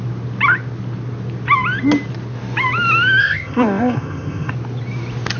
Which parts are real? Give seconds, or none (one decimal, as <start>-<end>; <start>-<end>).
0.0-3.2; 4.5-5.4